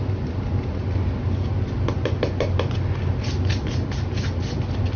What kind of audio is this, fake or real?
real